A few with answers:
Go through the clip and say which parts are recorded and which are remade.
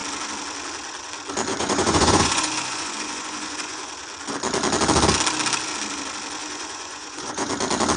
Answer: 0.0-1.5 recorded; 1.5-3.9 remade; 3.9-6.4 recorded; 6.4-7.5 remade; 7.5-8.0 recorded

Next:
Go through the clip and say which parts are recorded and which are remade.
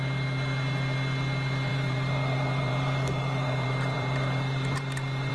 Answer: 0.0-1.7 recorded; 1.7-5.3 remade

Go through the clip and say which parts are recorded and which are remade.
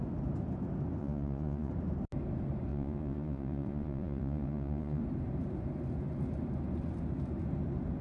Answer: 0.0-1.0 recorded; 1.0-1.7 remade; 1.7-2.7 recorded; 2.7-5.0 remade; 5.0-8.0 recorded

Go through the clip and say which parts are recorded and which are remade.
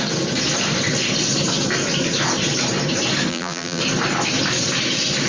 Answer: 0.0-3.3 recorded; 3.3-3.8 remade; 3.8-5.3 recorded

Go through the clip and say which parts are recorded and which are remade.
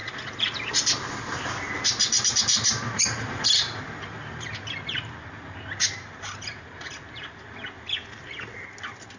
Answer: 0.0-2.5 recorded; 2.5-3.8 remade; 3.8-5.8 recorded; 5.8-6.7 remade; 6.7-9.2 recorded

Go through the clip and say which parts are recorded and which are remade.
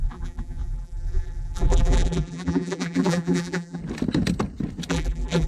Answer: 0.0-3.8 remade; 3.8-4.9 recorded; 4.9-5.5 remade